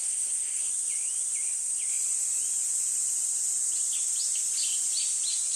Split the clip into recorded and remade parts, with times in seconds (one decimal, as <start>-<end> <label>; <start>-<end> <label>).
0.0-0.7 remade; 0.7-5.6 recorded